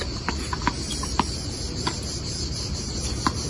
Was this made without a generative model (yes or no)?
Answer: no